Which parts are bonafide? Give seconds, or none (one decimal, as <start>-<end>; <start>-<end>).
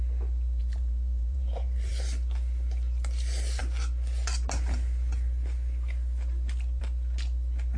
0.0-0.6; 1.9-7.8